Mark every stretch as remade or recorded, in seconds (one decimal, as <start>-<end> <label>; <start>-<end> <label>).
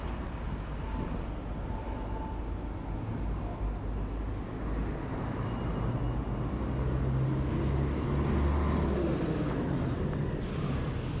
0.0-5.1 recorded; 5.1-6.0 remade; 6.0-11.2 recorded